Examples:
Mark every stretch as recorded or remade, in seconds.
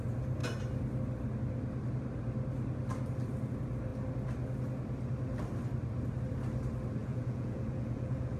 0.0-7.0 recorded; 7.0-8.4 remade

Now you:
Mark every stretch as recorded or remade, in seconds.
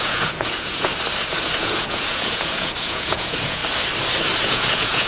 0.0-0.9 remade; 0.9-1.6 recorded; 1.6-3.6 remade; 3.6-4.4 recorded; 4.4-5.1 remade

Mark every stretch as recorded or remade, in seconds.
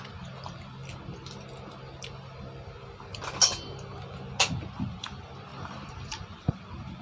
0.0-5.5 recorded; 5.5-6.6 remade; 6.6-7.0 recorded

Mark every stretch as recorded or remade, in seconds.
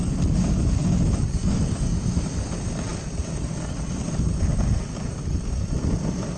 0.0-6.4 recorded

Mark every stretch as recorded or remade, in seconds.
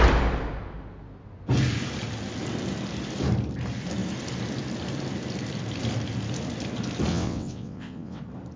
0.0-7.1 recorded; 7.1-8.2 remade; 8.2-8.6 recorded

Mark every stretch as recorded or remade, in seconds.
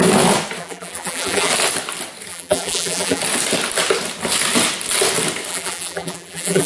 0.0-0.6 recorded; 0.6-1.5 remade; 1.5-2.3 recorded; 2.3-3.2 remade; 3.2-5.5 recorded; 5.5-6.7 remade